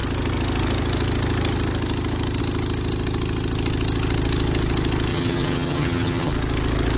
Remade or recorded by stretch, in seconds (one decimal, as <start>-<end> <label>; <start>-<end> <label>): 0.0-5.1 recorded; 5.1-6.3 remade; 6.3-7.0 recorded